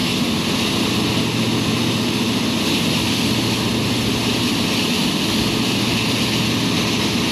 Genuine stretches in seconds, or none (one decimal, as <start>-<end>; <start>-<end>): 0.0-7.3